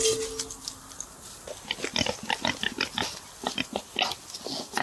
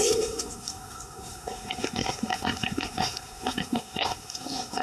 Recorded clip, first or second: first